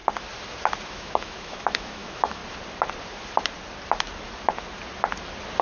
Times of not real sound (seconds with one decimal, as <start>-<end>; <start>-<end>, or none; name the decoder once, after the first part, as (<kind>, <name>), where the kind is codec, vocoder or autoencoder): 0.9-2.4 (autoencoder, DAC-VAE)